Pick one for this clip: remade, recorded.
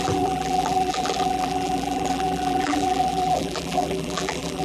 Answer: remade